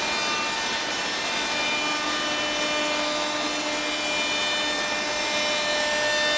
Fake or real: real